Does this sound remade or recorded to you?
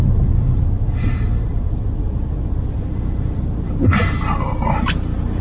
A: remade